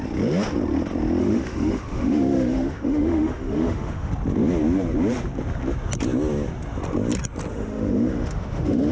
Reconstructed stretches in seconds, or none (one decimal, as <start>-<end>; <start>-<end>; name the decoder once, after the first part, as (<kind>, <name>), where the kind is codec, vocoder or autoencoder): 1.2-4.1 (autoencoder, DAC-VAE); 7.5-8.9

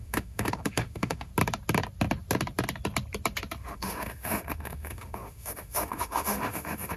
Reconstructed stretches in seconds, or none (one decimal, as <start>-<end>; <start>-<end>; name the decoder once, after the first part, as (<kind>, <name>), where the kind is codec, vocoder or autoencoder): 0.0-1.3 (autoencoder, DAC-VAE); 3.6-7.0

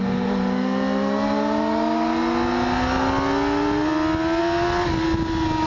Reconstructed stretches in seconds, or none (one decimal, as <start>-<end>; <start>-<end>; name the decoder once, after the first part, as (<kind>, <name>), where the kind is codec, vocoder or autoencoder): none

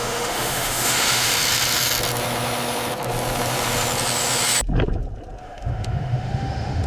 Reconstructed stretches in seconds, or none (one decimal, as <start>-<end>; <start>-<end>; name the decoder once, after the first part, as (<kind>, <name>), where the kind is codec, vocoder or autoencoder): 0.0-1.3 (autoencoder, DAC-VAE); 5.4-6.9

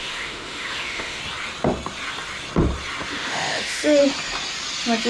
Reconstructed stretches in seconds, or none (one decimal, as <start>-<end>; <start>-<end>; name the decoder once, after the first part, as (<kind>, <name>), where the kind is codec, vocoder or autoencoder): 0.0-1.2 (autoencoder, DAC-VAE); 3.1-4.0

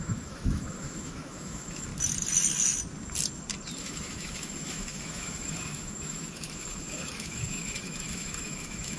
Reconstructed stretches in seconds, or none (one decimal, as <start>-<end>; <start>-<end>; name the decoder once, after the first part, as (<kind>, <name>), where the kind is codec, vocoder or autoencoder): 0.0-1.9 (autoencoder, DAC-VAE); 3.8-9.0

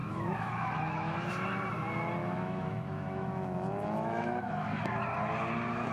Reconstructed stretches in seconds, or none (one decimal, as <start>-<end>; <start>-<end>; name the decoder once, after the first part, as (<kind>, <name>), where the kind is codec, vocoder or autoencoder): 0.0-1.3 (autoencoder, DAC-VAE); 2.2-4.8